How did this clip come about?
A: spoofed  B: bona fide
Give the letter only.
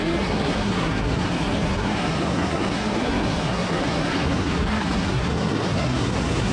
A